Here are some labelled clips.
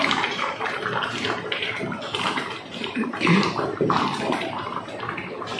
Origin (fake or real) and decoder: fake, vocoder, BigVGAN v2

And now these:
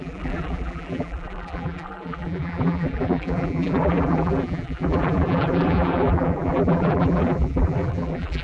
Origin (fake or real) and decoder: fake, vocoder, BigVGAN v2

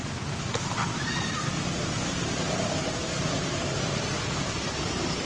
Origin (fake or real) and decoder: real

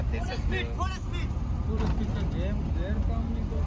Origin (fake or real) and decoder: real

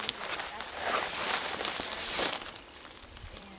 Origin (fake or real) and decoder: fake, vocoder, BigVGAN v2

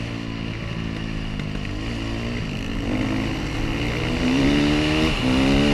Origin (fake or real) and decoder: real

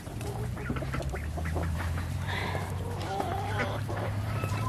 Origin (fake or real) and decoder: fake, vocoder, BigVGAN v2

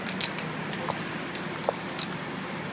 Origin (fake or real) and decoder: real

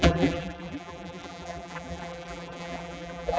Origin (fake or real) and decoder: fake, vocoder, BigVGAN v2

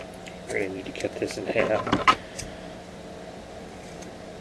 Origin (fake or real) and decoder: fake, vocoder, BigVGAN v2